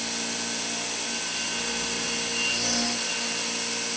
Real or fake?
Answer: real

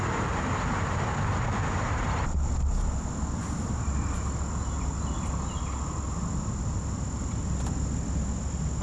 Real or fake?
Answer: real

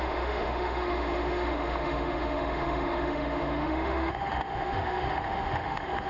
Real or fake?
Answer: fake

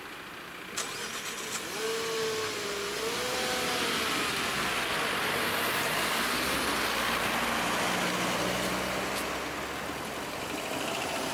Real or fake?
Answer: real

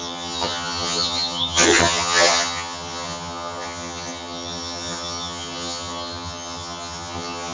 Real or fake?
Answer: fake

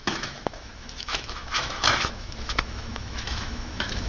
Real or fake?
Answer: fake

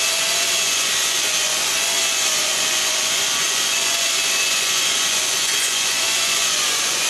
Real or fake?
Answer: fake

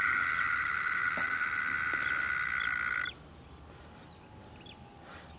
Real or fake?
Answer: real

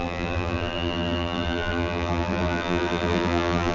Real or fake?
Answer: fake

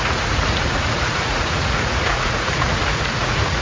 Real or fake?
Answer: fake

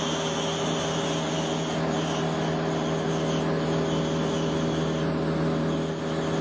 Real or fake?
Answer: real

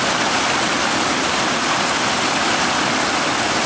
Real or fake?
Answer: real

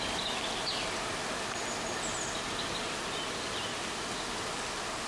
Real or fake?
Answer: real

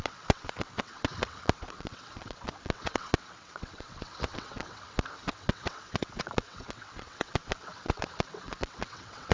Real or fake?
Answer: fake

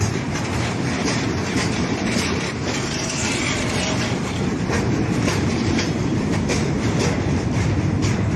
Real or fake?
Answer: fake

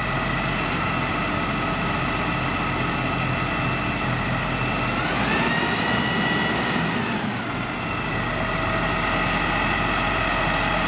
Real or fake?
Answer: real